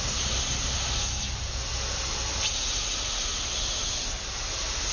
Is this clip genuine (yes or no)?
yes